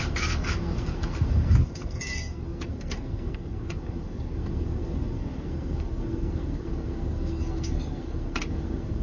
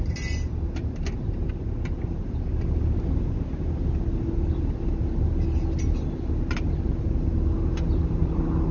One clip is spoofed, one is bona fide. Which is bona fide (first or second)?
second